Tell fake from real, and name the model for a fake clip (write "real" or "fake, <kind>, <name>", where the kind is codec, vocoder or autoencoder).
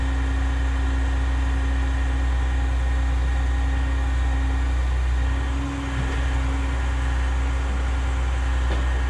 real